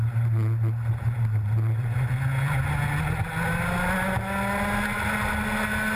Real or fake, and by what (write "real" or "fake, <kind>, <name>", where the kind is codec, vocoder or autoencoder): real